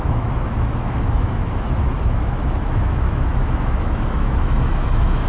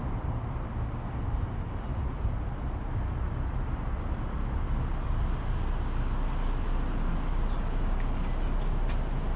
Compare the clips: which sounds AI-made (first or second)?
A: first